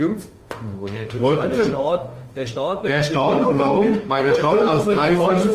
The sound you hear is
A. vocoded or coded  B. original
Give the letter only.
A